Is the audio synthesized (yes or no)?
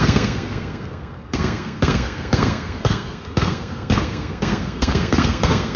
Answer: yes